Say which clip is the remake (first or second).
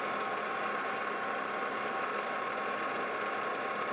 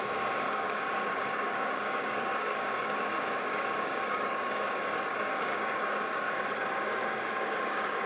second